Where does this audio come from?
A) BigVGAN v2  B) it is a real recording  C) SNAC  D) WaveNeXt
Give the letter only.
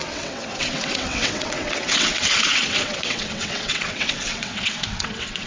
D